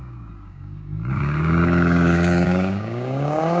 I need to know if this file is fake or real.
fake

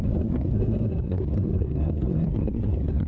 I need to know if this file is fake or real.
fake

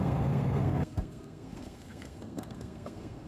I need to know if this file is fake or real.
fake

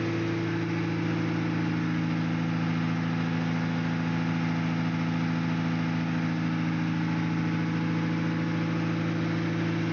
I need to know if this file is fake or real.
real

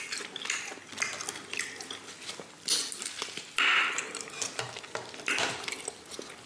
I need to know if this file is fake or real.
real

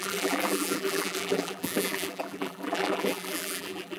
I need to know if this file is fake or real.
fake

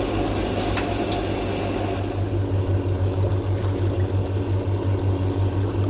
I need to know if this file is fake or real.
real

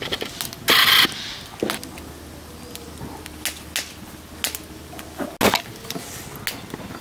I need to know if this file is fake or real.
real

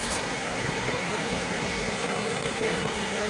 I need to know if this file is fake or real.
fake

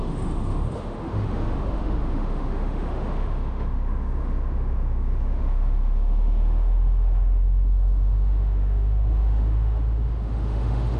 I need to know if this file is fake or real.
fake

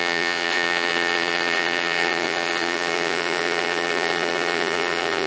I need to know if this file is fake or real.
fake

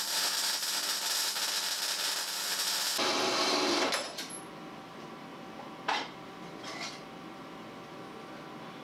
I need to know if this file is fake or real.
real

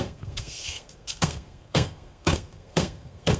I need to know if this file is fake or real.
fake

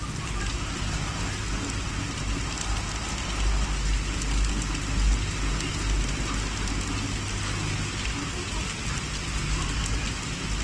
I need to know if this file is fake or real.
real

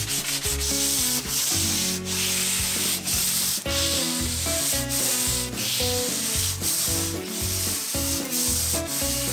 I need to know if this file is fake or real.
real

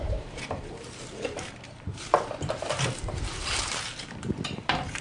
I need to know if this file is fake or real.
fake